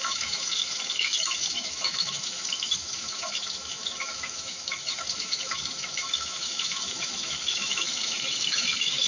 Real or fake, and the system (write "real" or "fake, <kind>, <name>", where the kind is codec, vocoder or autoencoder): fake, autoencoder, DAC-VAE